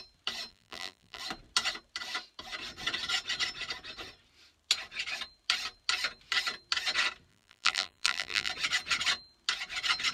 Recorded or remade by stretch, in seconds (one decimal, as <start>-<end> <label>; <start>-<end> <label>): 0.0-0.5 recorded; 0.5-1.2 remade; 1.2-7.3 recorded; 7.3-8.5 remade; 8.5-10.1 recorded